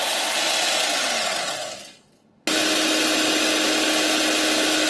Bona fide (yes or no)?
yes